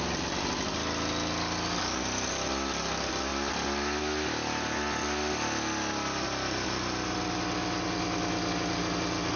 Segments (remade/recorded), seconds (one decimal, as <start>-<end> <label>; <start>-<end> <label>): 0.0-9.4 recorded

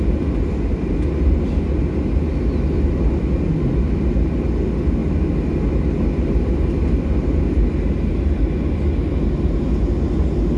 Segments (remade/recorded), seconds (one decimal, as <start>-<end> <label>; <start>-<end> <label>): 0.0-10.6 recorded

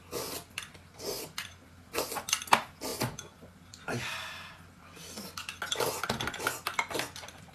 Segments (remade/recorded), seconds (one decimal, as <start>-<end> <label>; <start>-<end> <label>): 0.0-7.5 recorded

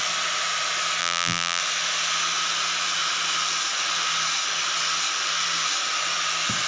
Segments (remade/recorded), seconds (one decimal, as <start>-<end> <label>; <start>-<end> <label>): 0.0-1.0 recorded; 1.0-1.6 remade; 1.6-6.7 recorded

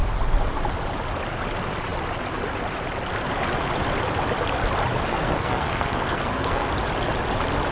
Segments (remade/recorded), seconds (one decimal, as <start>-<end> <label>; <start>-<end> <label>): 0.0-5.1 recorded; 5.1-6.7 remade; 6.7-7.7 recorded